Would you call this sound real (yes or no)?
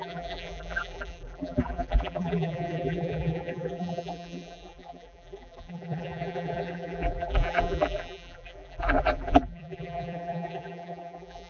no